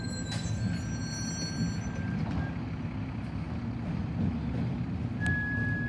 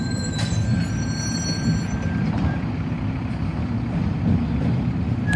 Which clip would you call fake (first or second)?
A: second